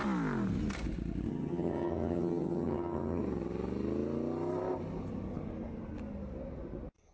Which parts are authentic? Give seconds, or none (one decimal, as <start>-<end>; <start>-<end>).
0.0-1.3; 3.2-7.1